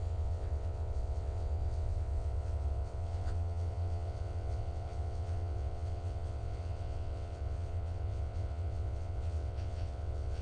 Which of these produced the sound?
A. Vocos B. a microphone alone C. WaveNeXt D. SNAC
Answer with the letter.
C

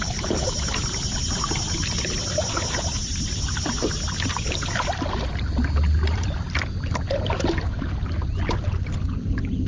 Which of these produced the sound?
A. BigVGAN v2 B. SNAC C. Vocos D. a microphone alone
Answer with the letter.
D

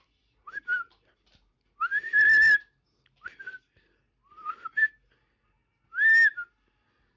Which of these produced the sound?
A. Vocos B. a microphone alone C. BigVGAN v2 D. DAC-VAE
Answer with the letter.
B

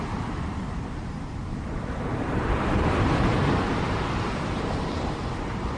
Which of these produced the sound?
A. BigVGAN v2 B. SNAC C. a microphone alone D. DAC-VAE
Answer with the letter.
A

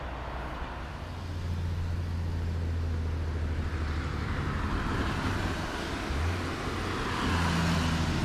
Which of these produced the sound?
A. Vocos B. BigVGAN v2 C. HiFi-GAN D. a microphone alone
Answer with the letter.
D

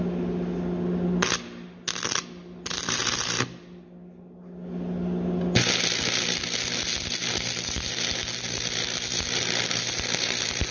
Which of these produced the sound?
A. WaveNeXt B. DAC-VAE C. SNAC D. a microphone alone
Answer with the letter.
D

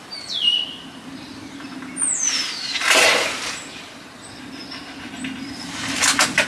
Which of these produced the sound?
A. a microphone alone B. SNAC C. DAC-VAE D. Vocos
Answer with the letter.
A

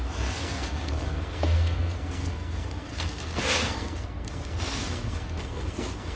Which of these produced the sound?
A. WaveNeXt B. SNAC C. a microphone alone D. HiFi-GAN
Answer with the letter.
B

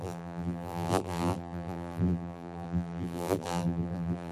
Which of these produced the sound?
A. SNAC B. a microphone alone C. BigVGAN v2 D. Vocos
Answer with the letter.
C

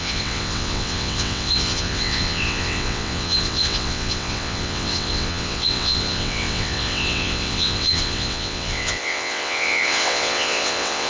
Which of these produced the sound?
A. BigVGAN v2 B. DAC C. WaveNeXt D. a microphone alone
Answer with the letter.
C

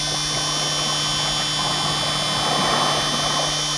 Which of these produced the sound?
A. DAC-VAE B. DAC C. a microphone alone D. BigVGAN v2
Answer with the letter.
C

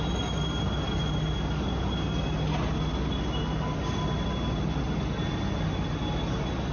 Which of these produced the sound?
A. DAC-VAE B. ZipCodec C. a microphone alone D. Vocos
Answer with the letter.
C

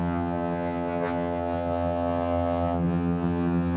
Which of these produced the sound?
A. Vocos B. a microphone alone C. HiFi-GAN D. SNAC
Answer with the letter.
C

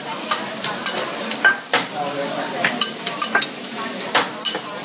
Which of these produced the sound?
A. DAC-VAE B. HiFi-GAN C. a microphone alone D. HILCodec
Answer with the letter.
C